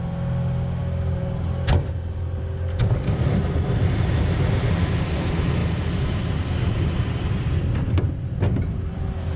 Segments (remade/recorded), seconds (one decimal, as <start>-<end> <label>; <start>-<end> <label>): 0.0-9.4 recorded